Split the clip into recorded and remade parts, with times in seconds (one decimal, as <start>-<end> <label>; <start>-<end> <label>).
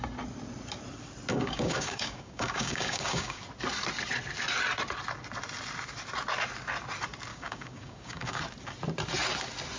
0.0-1.3 recorded; 1.3-3.4 remade; 3.4-7.3 recorded; 7.3-8.4 remade; 8.4-9.8 recorded